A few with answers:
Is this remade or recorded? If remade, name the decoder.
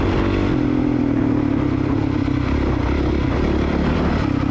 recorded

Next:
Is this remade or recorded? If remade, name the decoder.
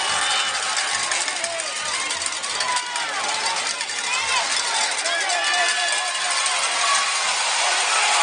recorded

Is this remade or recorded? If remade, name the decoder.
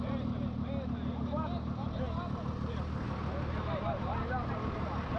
recorded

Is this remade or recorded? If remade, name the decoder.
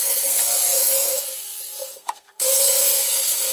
remade, codec, SNAC